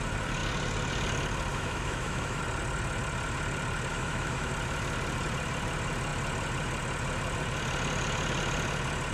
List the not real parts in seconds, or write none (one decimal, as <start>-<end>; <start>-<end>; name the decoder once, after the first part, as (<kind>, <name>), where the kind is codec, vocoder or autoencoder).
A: 1.5-2.4 (autoencoder, DAC-VAE); 3.9-4.5